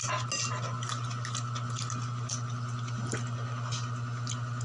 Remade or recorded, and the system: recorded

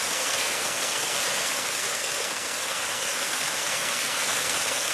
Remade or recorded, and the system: remade, codec, SNAC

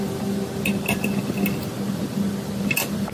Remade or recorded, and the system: recorded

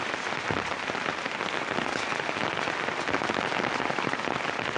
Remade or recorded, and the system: recorded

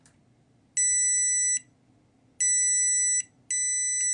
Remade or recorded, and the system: recorded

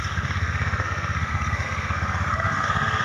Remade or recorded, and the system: remade, codec, SNAC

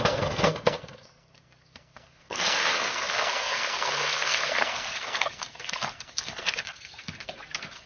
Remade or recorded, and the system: remade, codec, SNAC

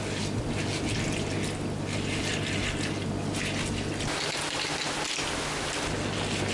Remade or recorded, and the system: recorded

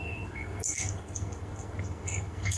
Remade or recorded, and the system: remade, codec, SNAC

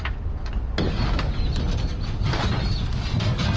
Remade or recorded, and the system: recorded